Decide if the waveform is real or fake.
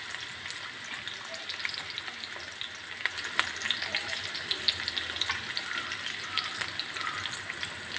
real